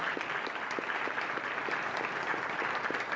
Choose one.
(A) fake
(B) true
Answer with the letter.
B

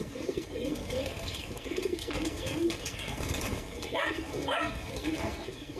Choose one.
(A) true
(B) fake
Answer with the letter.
B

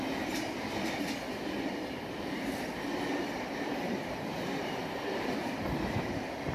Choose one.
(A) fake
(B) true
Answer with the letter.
A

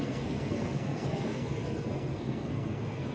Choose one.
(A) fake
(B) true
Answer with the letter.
A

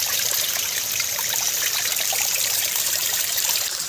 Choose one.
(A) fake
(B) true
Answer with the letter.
A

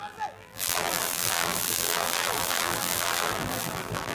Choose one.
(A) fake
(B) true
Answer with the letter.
A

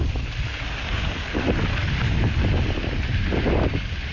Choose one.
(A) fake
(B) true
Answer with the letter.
B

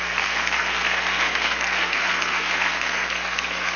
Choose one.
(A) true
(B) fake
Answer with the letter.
B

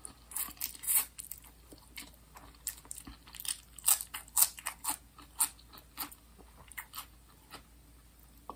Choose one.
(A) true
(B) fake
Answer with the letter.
A